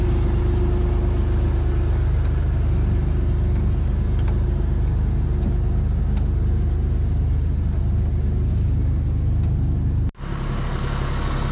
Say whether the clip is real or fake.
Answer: real